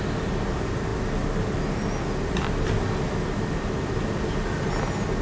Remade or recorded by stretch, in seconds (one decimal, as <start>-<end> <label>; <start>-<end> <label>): 0.0-5.2 recorded